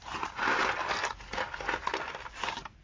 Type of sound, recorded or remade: recorded